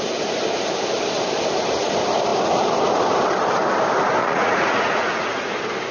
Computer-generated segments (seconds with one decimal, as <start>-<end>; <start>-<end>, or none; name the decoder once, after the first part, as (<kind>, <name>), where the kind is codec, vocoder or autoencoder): 4.2-5.5 (vocoder, Vocos)

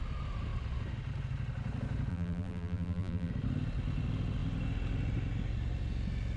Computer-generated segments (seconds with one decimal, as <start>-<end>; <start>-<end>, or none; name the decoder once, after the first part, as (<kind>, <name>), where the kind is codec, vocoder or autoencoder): 2.1-3.3 (vocoder, BigVGAN v2)

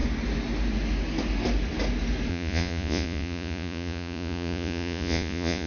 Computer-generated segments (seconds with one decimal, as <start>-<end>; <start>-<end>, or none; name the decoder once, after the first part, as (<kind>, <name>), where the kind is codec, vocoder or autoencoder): 2.3-5.7 (vocoder, Vocos)

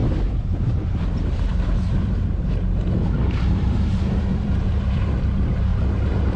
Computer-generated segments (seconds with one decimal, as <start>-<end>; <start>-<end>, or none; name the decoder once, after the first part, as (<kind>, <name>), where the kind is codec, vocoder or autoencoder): 0.0-5.7 (vocoder, BigVGAN v2)